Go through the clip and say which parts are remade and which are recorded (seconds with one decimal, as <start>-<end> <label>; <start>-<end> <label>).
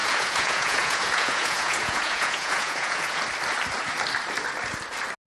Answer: 0.0-3.2 remade; 3.2-5.4 recorded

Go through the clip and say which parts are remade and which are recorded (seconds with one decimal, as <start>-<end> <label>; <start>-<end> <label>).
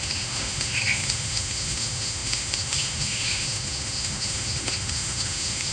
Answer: 0.0-5.7 remade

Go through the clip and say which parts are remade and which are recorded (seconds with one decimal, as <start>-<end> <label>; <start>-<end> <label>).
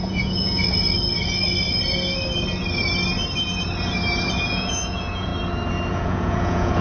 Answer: 0.0-0.6 remade; 0.6-4.3 recorded; 4.3-5.3 remade; 5.3-5.9 recorded; 5.9-6.8 remade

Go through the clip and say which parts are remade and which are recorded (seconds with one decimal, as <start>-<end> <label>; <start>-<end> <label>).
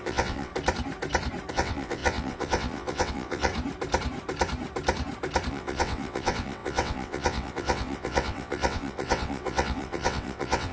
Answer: 0.0-0.5 remade; 0.5-1.5 recorded; 1.5-3.5 remade; 3.5-5.5 recorded; 5.5-10.7 remade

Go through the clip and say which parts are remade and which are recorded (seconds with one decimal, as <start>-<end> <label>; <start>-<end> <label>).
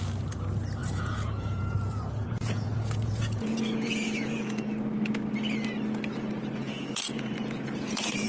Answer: 0.0-0.8 recorded; 0.8-4.6 remade; 4.6-6.6 recorded; 6.6-8.3 remade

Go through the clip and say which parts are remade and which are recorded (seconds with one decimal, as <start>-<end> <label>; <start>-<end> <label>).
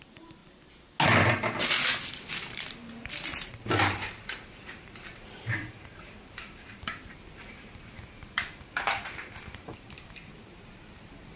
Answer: 0.0-0.4 remade; 0.4-2.3 recorded; 2.3-11.4 remade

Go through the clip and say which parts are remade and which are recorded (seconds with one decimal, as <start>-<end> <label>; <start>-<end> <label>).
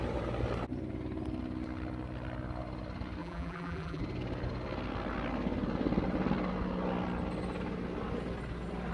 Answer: 0.0-3.2 recorded; 3.2-4.0 remade; 4.0-8.9 recorded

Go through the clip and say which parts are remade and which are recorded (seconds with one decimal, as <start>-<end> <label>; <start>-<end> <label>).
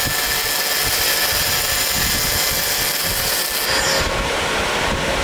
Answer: 0.0-5.2 recorded